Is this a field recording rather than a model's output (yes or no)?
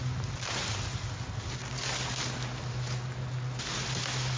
yes